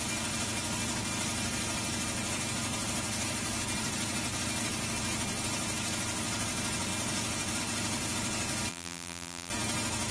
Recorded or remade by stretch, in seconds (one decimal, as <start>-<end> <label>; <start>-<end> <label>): 0.0-8.7 recorded; 8.7-9.5 remade; 9.5-10.1 recorded